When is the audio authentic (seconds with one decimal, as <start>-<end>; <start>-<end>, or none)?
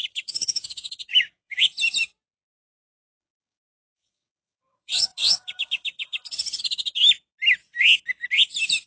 1.6-2.6; 6.6-8.9